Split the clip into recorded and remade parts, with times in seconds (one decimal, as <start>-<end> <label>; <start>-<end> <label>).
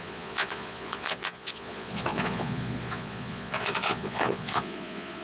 0.0-5.2 remade